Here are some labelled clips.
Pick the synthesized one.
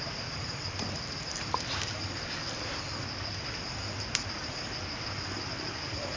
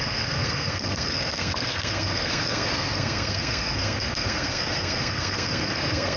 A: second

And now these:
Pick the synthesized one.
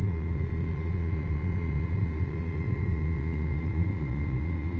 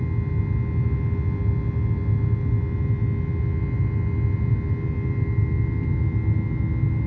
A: first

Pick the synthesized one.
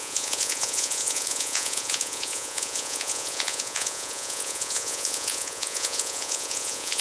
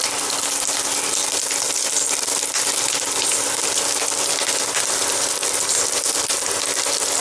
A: first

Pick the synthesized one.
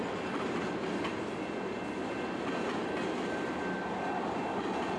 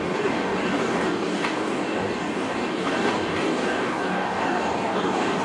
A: second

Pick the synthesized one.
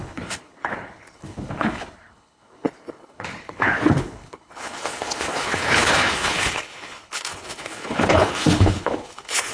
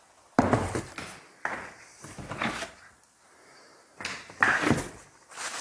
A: first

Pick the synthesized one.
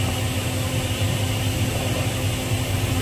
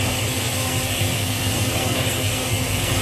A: second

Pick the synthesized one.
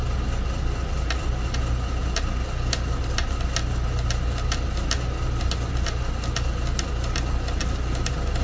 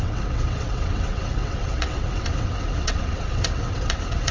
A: second